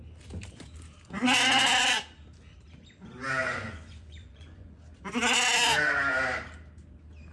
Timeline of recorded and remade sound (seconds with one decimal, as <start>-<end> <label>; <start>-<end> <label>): 0.0-3.4 recorded; 3.4-4.8 remade; 4.8-7.3 recorded